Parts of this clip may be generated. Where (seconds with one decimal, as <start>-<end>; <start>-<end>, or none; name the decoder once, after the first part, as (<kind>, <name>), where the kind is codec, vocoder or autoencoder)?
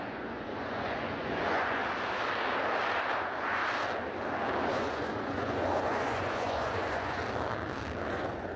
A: 0.0-1.8 (vocoder, Vocos); 3.2-3.6; 4.7-7.2; 8.1-8.6